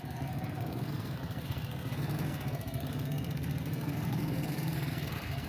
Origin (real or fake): fake